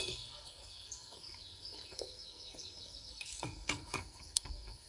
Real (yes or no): no